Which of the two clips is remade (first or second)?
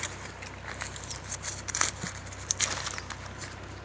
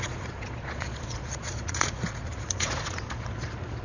second